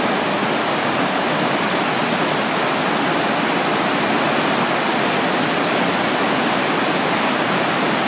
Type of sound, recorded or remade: recorded